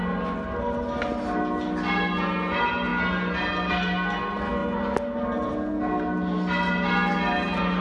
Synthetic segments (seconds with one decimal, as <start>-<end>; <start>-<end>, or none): none